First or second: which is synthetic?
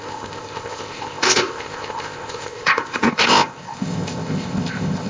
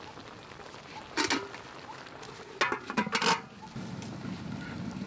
first